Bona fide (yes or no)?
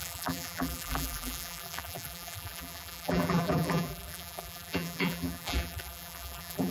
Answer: no